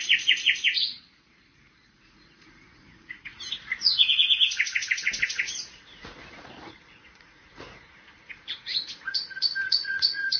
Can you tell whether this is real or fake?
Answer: fake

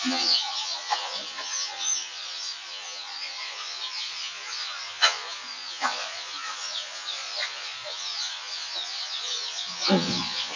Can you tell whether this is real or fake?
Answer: fake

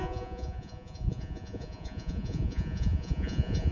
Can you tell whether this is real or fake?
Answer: fake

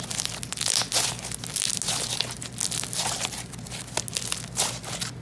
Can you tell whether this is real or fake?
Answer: real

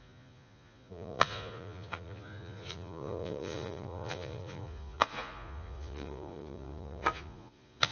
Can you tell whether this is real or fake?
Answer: fake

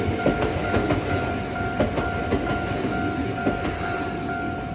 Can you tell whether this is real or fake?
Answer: real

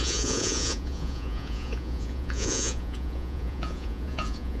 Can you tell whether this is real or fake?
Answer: fake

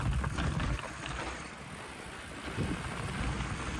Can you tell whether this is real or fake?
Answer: real